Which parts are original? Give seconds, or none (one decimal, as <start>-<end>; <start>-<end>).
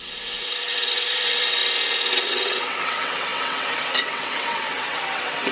1.6-2.1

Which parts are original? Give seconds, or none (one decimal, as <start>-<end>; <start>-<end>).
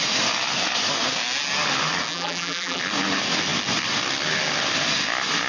0.0-2.1; 2.8-5.5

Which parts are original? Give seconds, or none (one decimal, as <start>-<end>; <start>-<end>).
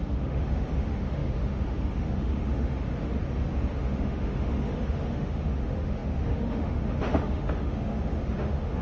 3.2-3.7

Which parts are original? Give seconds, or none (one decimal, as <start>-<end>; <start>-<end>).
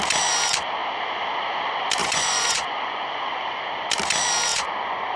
0.0-2.0; 3.6-4.5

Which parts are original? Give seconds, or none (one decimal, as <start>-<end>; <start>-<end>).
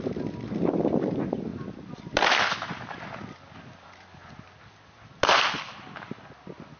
0.0-6.8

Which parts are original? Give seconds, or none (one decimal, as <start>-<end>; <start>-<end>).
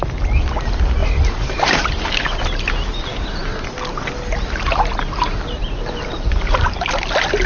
0.0-1.0; 2.4-5.6; 6.9-7.5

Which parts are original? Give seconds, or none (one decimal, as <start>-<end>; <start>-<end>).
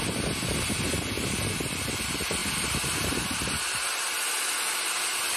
0.0-5.4